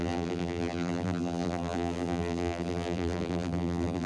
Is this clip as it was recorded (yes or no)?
no